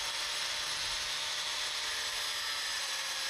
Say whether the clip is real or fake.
real